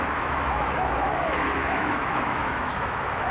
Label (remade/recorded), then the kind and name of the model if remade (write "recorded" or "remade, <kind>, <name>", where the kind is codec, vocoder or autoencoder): remade, autoencoder, DAC-VAE